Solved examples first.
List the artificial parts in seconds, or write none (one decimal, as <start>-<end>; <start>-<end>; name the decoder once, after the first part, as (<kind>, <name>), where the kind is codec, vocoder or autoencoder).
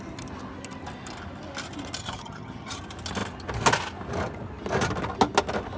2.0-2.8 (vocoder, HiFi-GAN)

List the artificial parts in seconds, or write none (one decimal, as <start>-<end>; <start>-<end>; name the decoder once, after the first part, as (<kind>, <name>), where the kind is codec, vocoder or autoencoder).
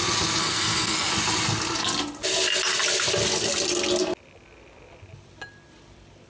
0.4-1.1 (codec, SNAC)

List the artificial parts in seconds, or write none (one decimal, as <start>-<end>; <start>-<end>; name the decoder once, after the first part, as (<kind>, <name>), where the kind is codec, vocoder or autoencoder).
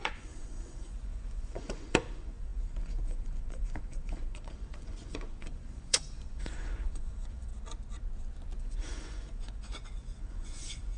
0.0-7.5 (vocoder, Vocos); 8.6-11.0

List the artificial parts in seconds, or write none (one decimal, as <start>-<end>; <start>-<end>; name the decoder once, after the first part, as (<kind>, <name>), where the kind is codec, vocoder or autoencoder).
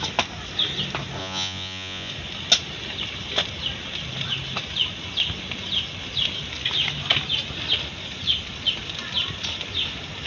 1.2-2.1 (vocoder, Vocos)